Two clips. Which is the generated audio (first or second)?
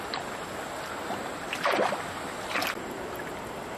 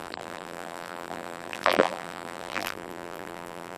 second